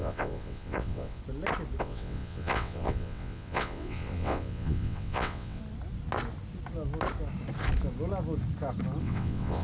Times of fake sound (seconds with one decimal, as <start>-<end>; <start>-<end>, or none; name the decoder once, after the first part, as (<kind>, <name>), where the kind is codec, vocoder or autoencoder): 0.0-1.2 (vocoder, WaveNeXt); 1.8-5.6; 9.0-9.6